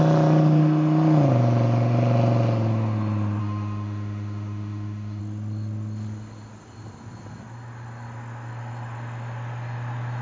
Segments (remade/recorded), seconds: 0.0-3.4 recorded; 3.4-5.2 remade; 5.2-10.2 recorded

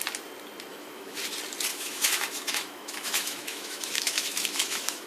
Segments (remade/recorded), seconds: 0.0-0.7 recorded; 0.7-1.2 remade; 1.2-1.7 recorded; 1.7-5.1 remade

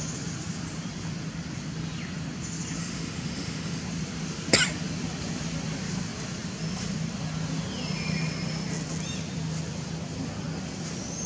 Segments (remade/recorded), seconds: 0.0-2.8 recorded; 2.8-3.8 remade; 3.8-11.3 recorded

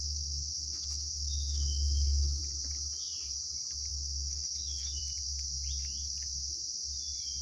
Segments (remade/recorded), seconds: 0.0-2.4 remade; 2.4-3.9 recorded; 3.9-5.0 remade; 5.0-7.4 recorded

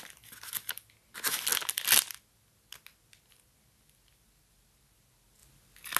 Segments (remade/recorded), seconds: 0.0-6.0 recorded

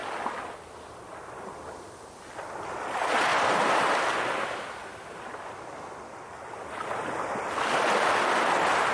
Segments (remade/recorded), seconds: 0.0-8.9 recorded